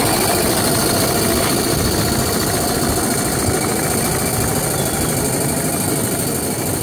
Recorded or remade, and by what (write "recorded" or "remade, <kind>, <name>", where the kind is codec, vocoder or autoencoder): recorded